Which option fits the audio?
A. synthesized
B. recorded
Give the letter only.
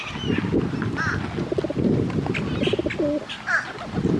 B